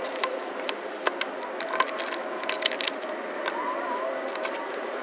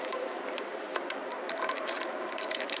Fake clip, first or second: second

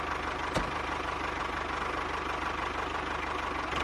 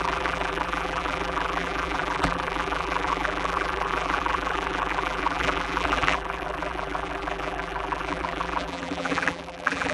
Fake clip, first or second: second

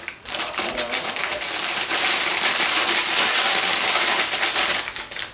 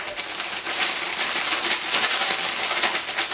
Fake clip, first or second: first